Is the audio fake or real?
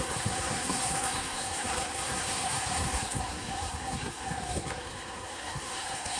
fake